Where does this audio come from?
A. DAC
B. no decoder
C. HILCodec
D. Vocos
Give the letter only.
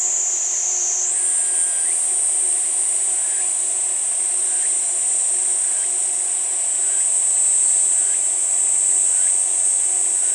B